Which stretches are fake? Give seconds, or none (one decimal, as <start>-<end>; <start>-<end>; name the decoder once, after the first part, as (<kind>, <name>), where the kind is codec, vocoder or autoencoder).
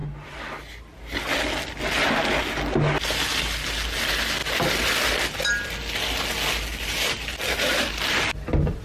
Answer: 4.4-5.2 (vocoder, BigVGAN v2); 6.7-7.7